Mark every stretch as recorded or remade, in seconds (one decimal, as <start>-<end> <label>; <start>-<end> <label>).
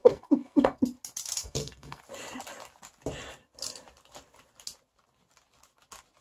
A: 0.0-0.8 remade; 0.8-1.4 recorded; 1.4-2.0 remade; 2.0-6.2 recorded